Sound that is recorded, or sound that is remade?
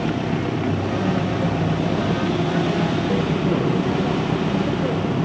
recorded